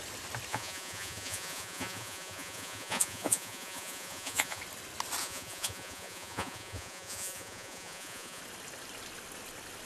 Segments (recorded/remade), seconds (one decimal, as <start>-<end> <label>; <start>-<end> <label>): 0.0-0.5 recorded; 0.5-4.6 remade; 4.6-5.2 recorded; 5.2-8.4 remade; 8.4-9.9 recorded

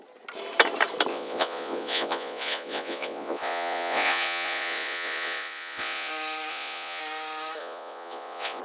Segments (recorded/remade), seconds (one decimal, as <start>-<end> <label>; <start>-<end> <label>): 0.0-1.1 recorded; 1.1-6.1 remade; 6.1-6.5 recorded; 6.5-7.0 remade; 7.0-7.6 recorded; 7.6-8.6 remade

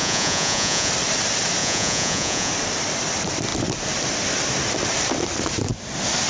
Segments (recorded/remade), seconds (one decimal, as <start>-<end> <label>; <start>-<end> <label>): 0.0-0.9 remade; 0.9-1.6 recorded; 1.6-2.5 remade; 2.5-6.3 recorded

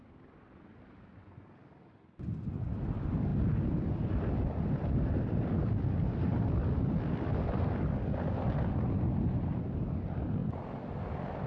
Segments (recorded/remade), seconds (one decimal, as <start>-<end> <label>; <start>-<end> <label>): 0.0-11.5 recorded

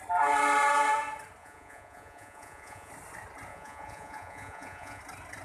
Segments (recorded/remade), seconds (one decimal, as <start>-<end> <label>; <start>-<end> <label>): 0.0-1.4 recorded; 1.4-2.9 remade; 2.9-3.5 recorded; 3.5-5.0 remade; 5.0-5.4 recorded

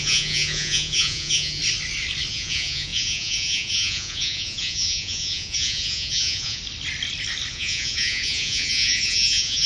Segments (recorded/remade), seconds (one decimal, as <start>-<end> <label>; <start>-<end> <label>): 0.0-1.6 remade; 1.6-2.3 recorded; 2.3-6.6 remade; 6.6-7.5 recorded; 7.5-9.7 remade